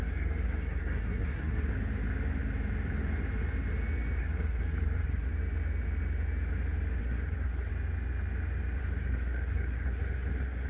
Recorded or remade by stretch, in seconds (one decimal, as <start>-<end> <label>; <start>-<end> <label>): 0.0-1.7 remade; 1.7-4.2 recorded; 4.2-5.3 remade; 5.3-7.0 recorded; 7.0-7.7 remade; 7.7-8.8 recorded; 8.8-10.7 remade